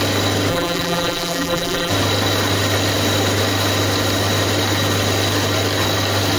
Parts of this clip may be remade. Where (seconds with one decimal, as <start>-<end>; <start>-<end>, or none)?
0.5-1.9